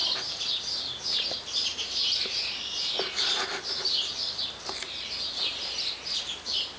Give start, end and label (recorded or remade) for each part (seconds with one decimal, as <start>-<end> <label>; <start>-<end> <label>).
0.0-6.8 recorded